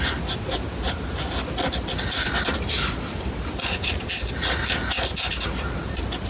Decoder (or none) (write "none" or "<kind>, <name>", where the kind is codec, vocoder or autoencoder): none